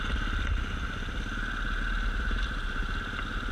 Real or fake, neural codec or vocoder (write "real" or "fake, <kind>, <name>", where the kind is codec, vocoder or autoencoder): real